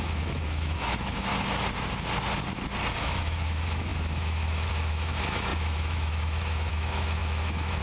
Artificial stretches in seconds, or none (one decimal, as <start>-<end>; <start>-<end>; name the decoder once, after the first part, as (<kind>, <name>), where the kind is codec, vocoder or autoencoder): 0.0-1.3 (autoencoder, DAC-VAE); 3.0-7.8